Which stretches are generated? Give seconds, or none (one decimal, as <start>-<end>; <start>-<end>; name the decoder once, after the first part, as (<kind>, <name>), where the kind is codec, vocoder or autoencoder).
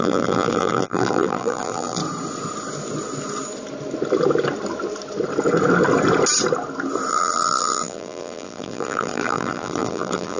0.0-2.0 (vocoder, BigVGAN v2); 7.1-10.4